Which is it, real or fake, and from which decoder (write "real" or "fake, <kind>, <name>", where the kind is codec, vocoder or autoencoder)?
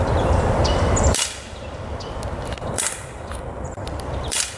fake, vocoder, BigVGAN v2